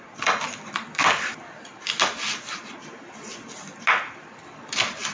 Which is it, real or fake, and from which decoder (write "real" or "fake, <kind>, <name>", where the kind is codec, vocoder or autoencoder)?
real